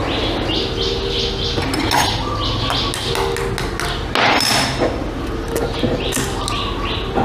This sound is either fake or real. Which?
real